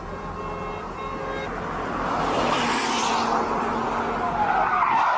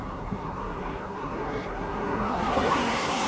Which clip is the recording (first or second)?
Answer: first